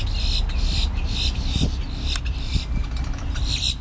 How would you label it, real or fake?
real